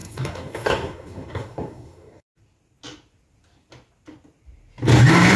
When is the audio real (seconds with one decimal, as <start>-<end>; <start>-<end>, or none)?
2.3-5.4